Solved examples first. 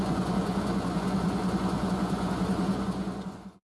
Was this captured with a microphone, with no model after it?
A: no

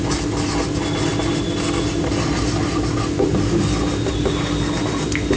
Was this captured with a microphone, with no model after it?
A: yes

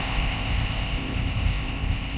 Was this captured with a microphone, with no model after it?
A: no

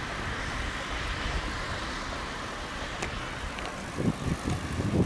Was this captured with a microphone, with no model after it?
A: yes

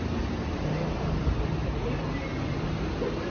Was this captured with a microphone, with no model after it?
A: yes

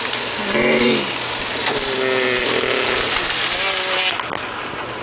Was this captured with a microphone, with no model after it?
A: yes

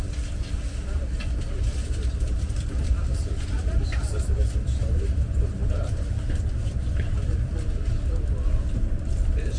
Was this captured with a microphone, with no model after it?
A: no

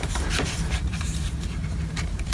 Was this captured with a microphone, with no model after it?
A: no